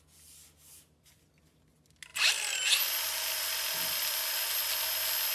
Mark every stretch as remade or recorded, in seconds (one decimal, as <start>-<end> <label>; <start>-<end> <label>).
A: 0.0-5.3 recorded